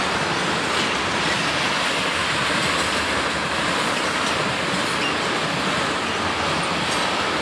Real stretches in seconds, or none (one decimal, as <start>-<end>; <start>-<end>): 0.0-7.4